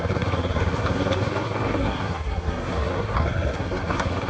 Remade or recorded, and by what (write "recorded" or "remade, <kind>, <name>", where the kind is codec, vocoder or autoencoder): remade, codec, SNAC